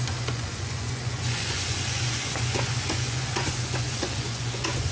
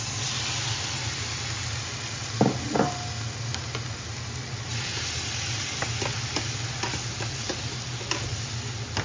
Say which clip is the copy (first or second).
first